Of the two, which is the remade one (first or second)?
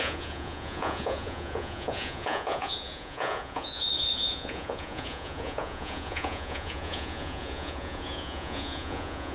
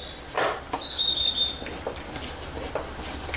first